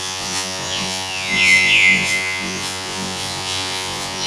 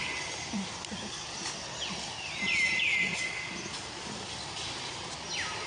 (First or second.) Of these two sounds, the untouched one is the second